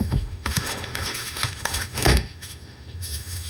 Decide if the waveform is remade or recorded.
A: remade